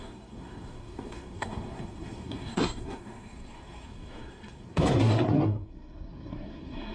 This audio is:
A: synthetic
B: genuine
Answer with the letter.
A